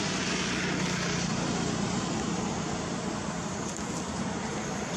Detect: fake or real real